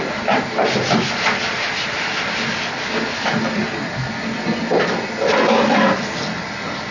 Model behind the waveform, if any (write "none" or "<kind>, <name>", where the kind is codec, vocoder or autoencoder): none